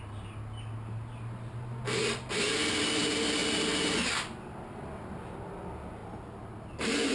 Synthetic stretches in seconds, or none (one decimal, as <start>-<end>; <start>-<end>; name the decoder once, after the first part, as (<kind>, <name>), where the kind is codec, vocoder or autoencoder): none